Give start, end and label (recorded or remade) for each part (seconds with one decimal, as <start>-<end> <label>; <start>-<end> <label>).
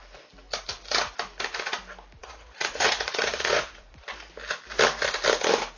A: 0.0-2.2 recorded; 2.2-4.0 remade; 4.0-5.8 recorded